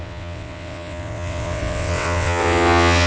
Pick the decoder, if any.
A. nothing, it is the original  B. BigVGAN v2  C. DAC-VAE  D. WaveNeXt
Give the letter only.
D